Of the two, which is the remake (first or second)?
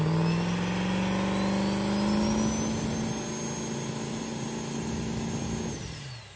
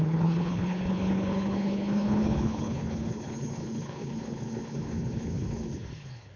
second